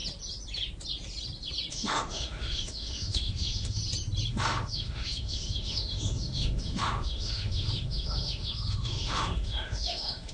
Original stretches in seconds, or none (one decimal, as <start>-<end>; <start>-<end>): 0.0-1.7; 3.8-4.3